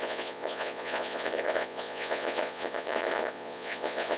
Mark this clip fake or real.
fake